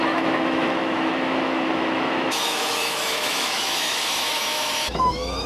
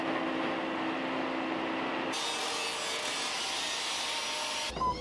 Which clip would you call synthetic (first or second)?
first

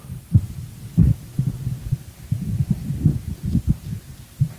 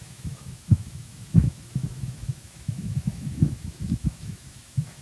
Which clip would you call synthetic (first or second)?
second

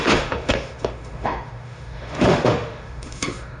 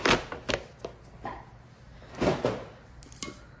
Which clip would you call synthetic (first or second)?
first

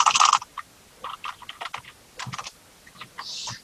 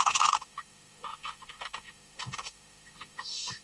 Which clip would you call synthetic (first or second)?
second